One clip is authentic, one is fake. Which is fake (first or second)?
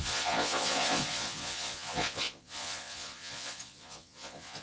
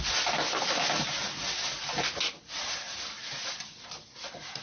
first